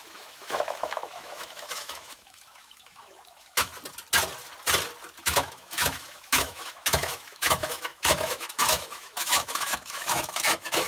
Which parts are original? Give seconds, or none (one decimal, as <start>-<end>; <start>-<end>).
3.7-5.2